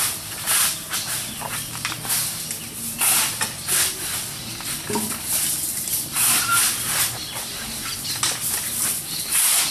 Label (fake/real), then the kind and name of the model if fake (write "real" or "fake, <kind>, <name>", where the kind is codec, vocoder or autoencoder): real